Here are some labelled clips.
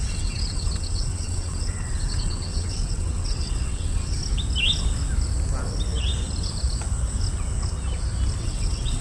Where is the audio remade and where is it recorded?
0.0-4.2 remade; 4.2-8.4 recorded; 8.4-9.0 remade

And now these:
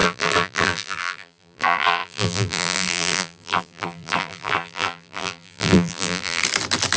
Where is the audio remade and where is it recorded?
0.0-6.4 remade; 6.4-7.0 recorded

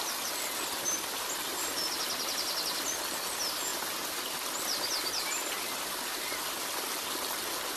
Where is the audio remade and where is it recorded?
0.0-7.8 recorded

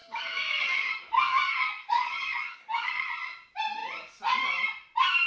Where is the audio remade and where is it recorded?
0.0-3.1 remade; 3.1-5.3 recorded

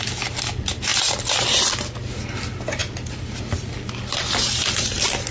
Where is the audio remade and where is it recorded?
0.0-5.3 recorded

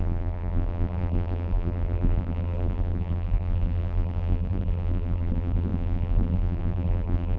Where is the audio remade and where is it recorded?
0.0-7.4 remade

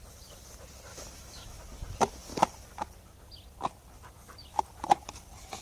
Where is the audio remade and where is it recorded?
0.0-0.9 recorded; 0.9-1.6 remade; 1.6-5.6 recorded